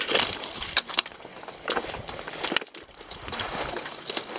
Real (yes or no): yes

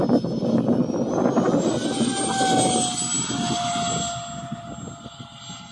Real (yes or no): yes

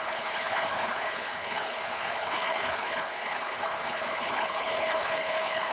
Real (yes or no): no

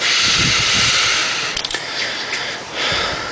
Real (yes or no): no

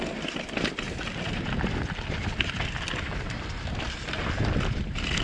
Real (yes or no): yes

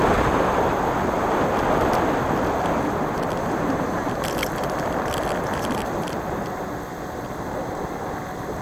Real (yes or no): yes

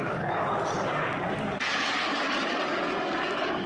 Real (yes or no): no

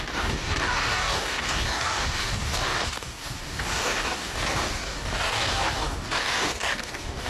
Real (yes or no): no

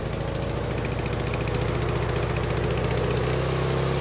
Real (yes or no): yes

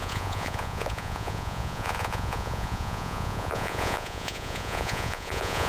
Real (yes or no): no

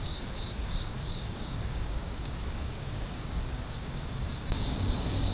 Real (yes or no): no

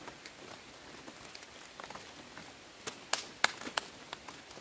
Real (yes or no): yes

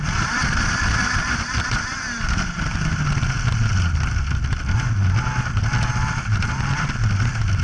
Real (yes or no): yes